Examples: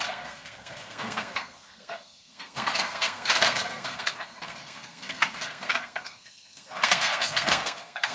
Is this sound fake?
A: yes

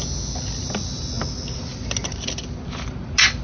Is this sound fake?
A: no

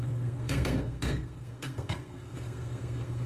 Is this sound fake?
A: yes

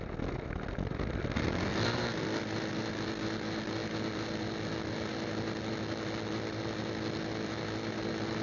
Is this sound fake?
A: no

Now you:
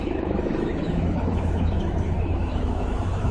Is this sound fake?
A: yes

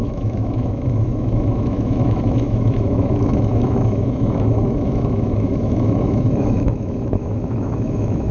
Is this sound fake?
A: yes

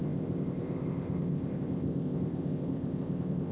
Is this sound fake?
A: yes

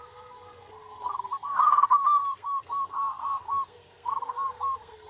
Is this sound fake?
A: yes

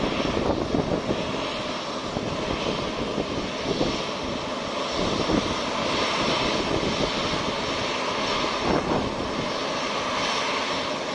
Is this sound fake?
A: no